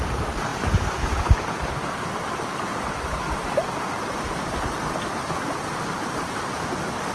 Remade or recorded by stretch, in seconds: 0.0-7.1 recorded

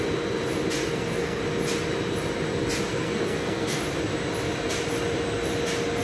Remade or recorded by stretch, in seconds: 0.0-0.8 recorded; 0.8-1.4 remade; 1.4-2.9 recorded; 2.9-3.8 remade; 3.8-6.0 recorded

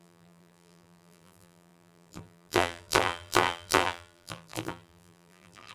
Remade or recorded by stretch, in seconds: 0.0-5.7 remade

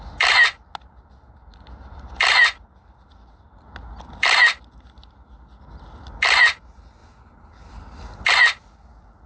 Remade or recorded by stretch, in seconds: 0.0-9.3 recorded

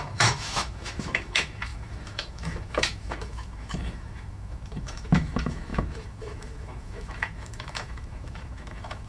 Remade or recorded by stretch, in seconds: 0.0-9.1 remade

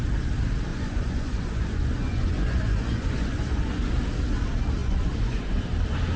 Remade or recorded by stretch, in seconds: 0.0-0.7 recorded; 0.7-3.9 remade; 3.9-4.8 recorded; 4.8-5.5 remade; 5.5-6.2 recorded

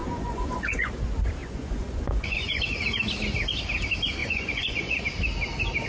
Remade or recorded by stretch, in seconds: 0.0-0.9 remade; 0.9-1.4 recorded; 1.4-2.6 remade; 2.6-4.2 recorded; 4.2-5.0 remade; 5.0-5.9 recorded

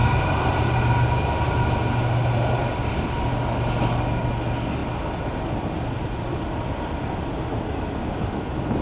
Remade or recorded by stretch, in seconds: 0.0-8.8 recorded